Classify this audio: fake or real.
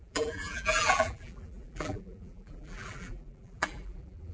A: fake